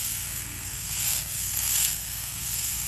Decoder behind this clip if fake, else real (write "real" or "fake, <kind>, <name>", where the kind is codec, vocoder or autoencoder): fake, codec, SNAC